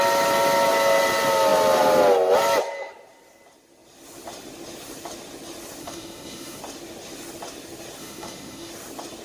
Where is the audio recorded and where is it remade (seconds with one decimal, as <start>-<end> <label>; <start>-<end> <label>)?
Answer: 0.0-5.8 recorded; 5.8-6.6 remade; 6.6-8.0 recorded; 8.0-8.7 remade; 8.7-9.2 recorded